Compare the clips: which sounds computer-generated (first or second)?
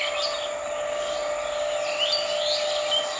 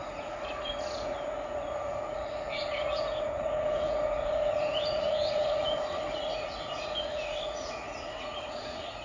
second